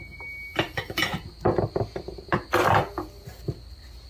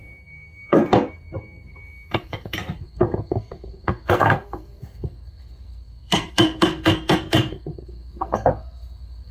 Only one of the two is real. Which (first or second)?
first